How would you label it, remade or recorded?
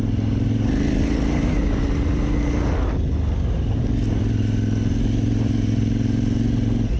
recorded